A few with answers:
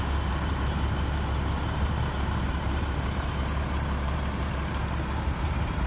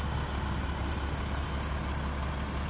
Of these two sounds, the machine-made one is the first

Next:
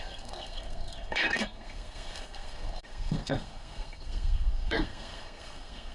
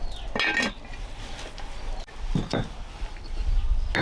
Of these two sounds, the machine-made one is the first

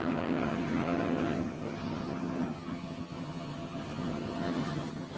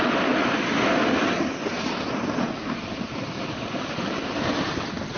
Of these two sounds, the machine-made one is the first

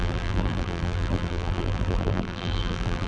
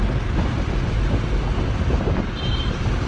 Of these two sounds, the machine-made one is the first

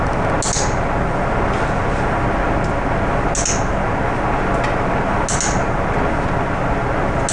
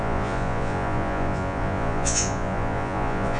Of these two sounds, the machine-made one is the second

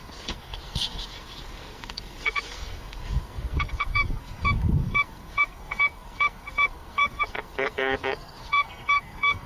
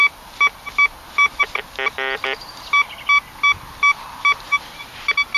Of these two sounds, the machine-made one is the first